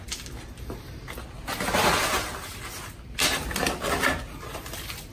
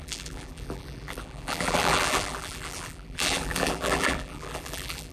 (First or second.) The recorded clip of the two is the first